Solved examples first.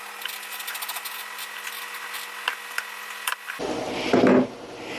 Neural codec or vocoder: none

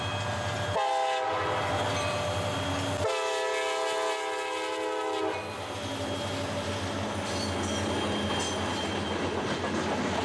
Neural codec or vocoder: none